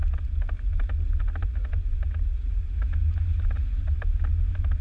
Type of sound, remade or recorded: recorded